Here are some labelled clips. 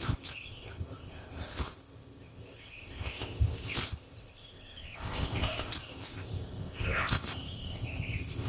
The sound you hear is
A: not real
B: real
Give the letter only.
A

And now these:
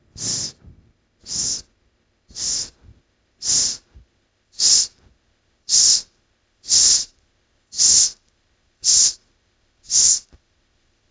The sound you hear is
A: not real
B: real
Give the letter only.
A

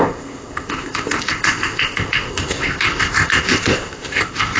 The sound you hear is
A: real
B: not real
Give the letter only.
B